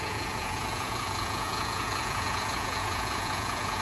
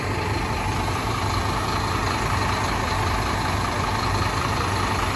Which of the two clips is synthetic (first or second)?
first